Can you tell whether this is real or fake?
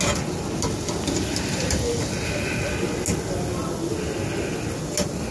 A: real